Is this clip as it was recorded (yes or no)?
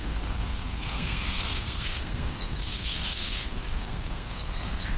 no